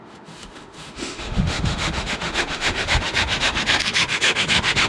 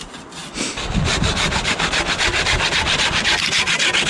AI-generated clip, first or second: first